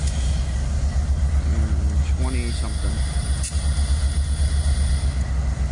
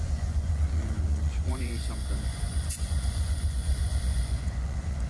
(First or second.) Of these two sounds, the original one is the first